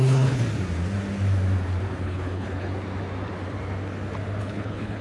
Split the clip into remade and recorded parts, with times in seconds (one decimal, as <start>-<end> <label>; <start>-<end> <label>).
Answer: 0.0-0.4 remade; 0.4-2.0 recorded; 2.0-2.7 remade; 2.7-4.4 recorded; 4.4-5.0 remade

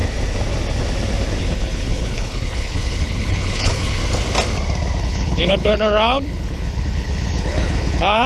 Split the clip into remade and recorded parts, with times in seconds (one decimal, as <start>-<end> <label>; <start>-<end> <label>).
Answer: 0.0-1.4 recorded; 1.4-4.0 remade; 4.0-5.0 recorded; 5.0-8.3 remade

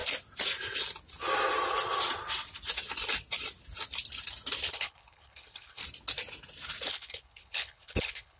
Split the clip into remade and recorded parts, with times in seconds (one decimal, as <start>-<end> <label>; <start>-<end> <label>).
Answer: 0.0-4.7 recorded; 4.7-5.8 remade; 5.8-6.9 recorded; 6.9-8.4 remade

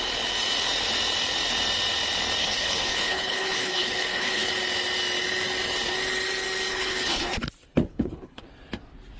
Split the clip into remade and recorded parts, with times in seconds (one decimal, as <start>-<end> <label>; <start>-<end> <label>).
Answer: 0.0-2.4 recorded; 2.4-4.5 remade; 4.5-6.7 recorded; 6.7-7.3 remade; 7.3-7.9 recorded; 7.9-8.5 remade; 8.5-9.2 recorded

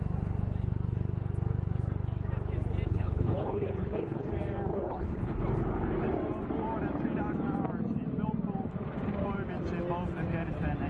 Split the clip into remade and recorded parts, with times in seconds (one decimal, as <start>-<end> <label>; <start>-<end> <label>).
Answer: 0.0-2.9 recorded; 2.9-4.3 remade; 4.3-4.7 recorded; 4.7-5.4 remade; 5.4-10.9 recorded

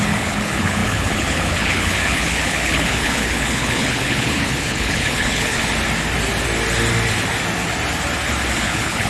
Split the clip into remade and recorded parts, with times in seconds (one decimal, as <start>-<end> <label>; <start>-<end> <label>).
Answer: 0.0-5.6 remade; 5.6-8.6 recorded; 8.6-9.1 remade

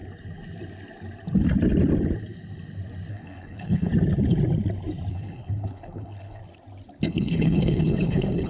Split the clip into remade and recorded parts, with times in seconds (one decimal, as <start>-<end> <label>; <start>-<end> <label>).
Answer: 0.0-3.1 recorded; 3.1-3.9 remade; 3.9-5.1 recorded; 5.1-6.4 remade; 6.4-7.1 recorded; 7.1-8.5 remade